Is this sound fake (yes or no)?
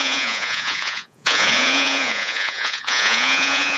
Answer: yes